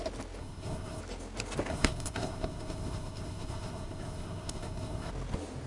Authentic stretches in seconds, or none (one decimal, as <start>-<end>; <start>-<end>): 0.0-0.4; 1.0-1.7; 5.1-5.7